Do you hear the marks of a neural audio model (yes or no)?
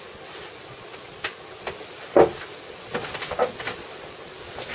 no